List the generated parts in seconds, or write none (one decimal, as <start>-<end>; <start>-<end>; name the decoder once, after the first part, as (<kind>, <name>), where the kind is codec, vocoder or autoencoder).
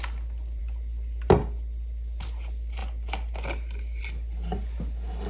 none